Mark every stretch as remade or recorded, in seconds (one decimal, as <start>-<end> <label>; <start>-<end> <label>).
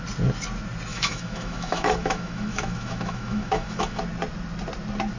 0.0-0.9 recorded; 0.9-4.0 remade; 4.0-5.2 recorded